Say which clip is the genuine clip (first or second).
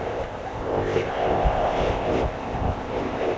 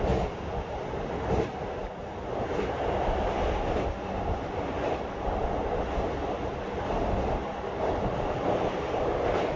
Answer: second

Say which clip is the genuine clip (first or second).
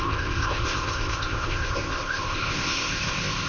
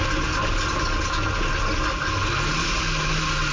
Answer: second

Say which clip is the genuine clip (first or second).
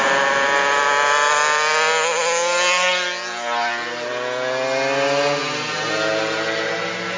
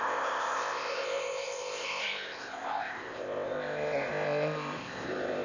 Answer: first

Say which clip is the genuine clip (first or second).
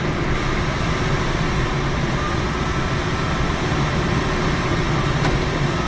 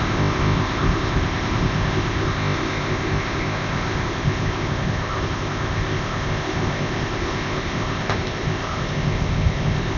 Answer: first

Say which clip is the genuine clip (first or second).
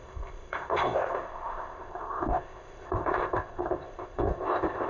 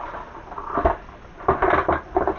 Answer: second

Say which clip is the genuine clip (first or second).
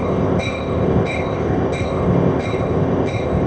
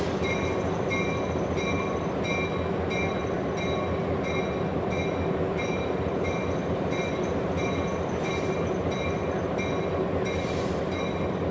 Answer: second